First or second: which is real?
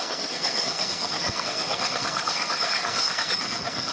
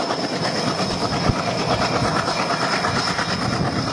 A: second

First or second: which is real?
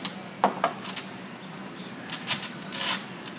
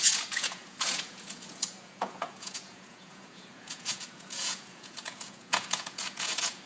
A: first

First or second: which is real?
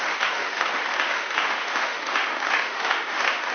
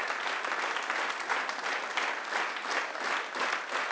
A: second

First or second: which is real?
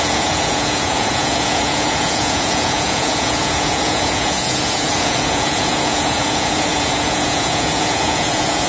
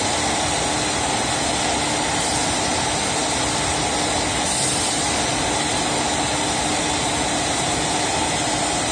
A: second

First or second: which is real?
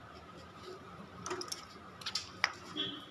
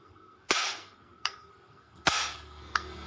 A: first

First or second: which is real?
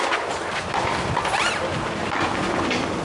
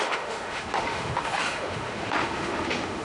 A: first